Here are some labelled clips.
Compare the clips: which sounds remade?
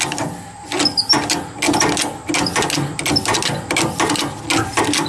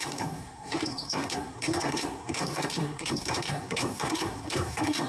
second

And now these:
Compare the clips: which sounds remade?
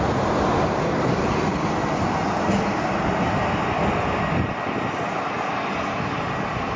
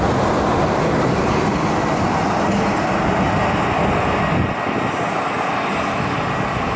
first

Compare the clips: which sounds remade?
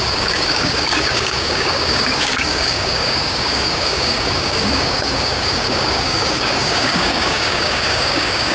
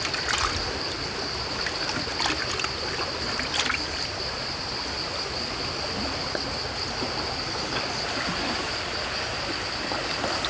first